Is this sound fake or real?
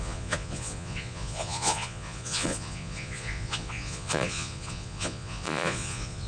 fake